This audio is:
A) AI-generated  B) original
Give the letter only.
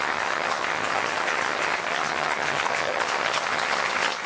A